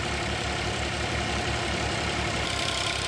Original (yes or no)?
no